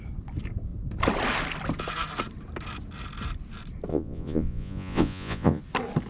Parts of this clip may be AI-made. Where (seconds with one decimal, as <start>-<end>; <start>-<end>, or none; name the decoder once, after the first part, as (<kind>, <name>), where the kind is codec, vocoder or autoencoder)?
3.9-5.6 (vocoder, Vocos)